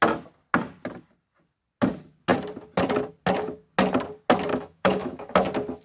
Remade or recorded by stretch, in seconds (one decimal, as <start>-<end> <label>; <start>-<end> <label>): 0.0-4.5 recorded; 4.5-5.3 remade; 5.3-5.8 recorded